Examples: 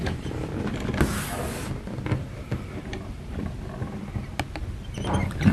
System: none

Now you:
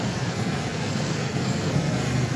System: codec, SNAC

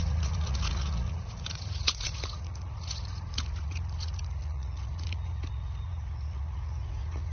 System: vocoder, Vocos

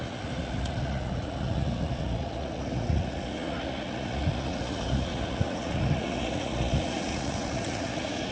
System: vocoder, Vocos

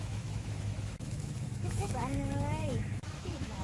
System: autoencoder, DAC-VAE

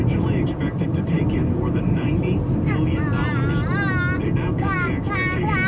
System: none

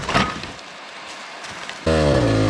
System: none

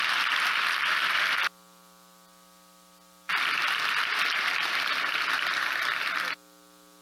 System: none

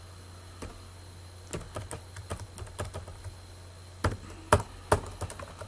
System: none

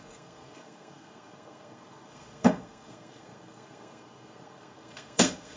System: codec, SNAC